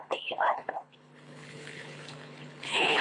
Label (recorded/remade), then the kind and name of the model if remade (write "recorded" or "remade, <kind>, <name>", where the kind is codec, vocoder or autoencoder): remade, codec, HILCodec